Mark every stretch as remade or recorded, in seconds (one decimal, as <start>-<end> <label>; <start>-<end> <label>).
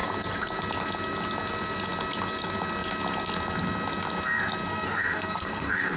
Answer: 0.0-4.7 recorded; 4.7-6.0 remade